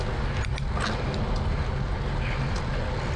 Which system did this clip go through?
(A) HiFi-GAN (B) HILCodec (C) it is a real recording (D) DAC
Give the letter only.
C